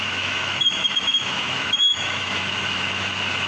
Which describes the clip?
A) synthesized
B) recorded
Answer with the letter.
A